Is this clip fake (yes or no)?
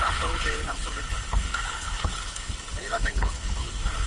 yes